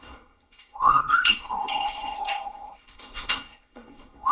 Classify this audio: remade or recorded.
remade